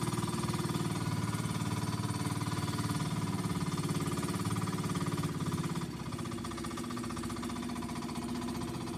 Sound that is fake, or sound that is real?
real